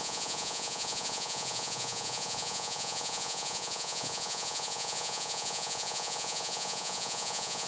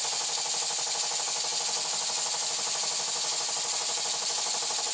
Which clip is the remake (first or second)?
first